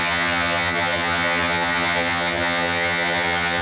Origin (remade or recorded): remade